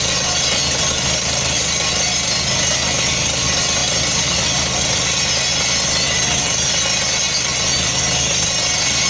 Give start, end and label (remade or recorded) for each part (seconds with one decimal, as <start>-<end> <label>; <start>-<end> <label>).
0.0-9.1 recorded